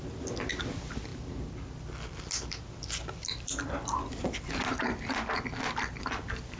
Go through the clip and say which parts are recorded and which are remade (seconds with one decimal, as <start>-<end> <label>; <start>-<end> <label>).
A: 0.0-6.6 recorded